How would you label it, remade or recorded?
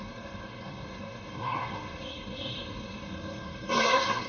remade